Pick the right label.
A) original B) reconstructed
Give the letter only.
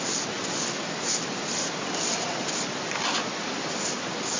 A